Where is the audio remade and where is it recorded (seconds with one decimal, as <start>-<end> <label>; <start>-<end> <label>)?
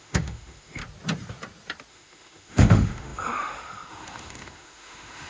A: 0.0-0.8 remade; 0.8-1.9 recorded; 1.9-5.3 remade